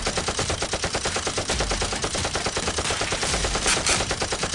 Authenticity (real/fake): fake